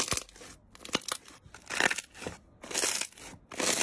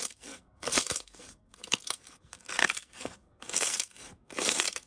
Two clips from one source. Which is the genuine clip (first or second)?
first